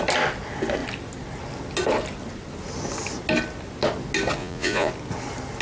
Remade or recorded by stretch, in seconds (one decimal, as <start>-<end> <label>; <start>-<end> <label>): 0.0-4.4 recorded; 4.4-4.9 remade; 4.9-5.6 recorded

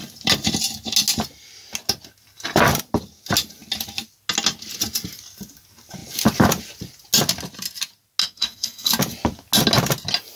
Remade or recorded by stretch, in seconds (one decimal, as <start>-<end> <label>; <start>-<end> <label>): 0.0-8.2 recorded; 8.2-8.9 remade; 8.9-10.4 recorded

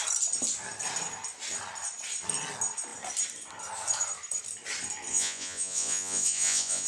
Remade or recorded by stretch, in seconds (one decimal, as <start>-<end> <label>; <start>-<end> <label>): 0.0-5.1 recorded; 5.1-6.9 remade

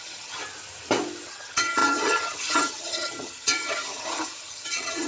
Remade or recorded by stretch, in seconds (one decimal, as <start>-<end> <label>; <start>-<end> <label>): 0.0-0.4 remade; 0.4-1.3 recorded; 1.3-5.1 remade

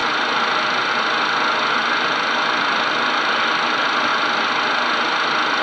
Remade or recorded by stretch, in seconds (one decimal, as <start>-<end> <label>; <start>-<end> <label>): 0.0-5.6 recorded

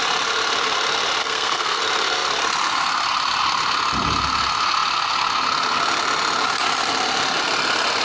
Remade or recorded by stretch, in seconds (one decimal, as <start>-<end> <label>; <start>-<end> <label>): 0.0-1.2 recorded; 1.2-1.8 remade; 1.8-8.0 recorded

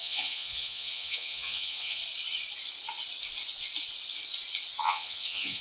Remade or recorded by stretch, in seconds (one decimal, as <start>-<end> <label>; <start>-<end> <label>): 0.0-2.0 remade; 2.0-4.8 recorded; 4.8-5.6 remade